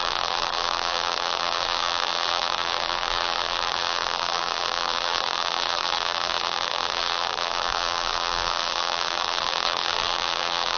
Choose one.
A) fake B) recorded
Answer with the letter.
A